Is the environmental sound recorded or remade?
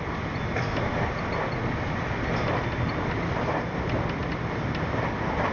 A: recorded